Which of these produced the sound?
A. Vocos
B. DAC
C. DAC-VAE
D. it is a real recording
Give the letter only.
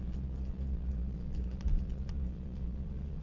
A